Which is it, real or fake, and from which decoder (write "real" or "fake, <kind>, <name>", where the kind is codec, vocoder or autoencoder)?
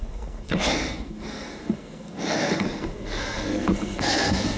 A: fake, codec, SNAC